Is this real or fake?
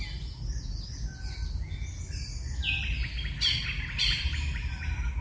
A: real